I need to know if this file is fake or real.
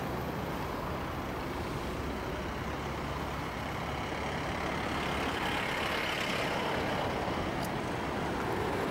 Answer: real